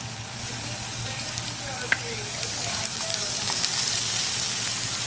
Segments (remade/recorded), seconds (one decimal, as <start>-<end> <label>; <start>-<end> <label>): 0.0-3.7 remade; 3.7-5.1 recorded

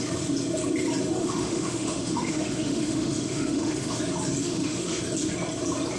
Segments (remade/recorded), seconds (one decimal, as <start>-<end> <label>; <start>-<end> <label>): 0.0-1.2 recorded; 1.2-4.0 remade; 4.0-4.4 recorded; 4.4-5.0 remade; 5.0-6.0 recorded

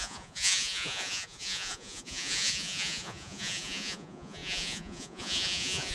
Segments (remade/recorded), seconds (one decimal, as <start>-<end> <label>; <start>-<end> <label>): 0.0-5.9 remade

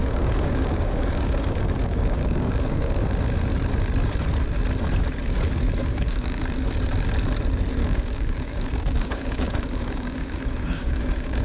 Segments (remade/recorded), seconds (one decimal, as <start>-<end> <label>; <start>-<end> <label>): 0.0-3.0 remade; 3.0-5.8 recorded; 5.8-6.4 remade; 6.4-7.8 recorded; 7.8-11.4 remade

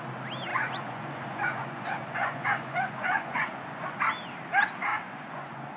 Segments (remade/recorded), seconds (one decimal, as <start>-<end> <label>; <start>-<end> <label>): 0.0-0.5 recorded; 0.5-4.0 remade; 4.0-4.9 recorded; 4.9-5.8 remade

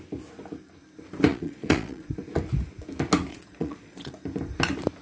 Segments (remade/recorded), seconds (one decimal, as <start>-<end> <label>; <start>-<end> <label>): 0.0-1.3 recorded; 1.3-2.1 remade; 2.1-3.3 recorded; 3.3-4.1 remade; 4.1-5.0 recorded